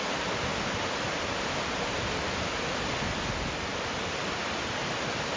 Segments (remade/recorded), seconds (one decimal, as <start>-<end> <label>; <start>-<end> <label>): 0.0-5.4 recorded